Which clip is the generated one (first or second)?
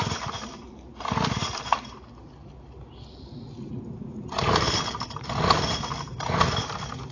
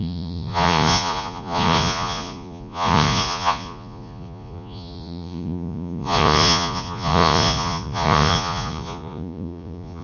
second